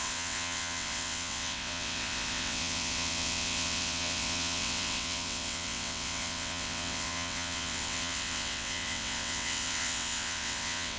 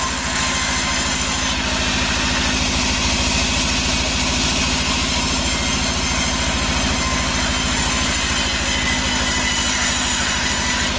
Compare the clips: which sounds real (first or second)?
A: second